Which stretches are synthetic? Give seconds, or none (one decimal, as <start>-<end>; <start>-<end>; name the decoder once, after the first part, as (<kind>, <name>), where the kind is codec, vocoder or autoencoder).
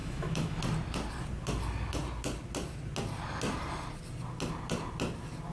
0.0-0.6 (autoencoder, DAC-VAE)